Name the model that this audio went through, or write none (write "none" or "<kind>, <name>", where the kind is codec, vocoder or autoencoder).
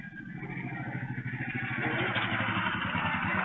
none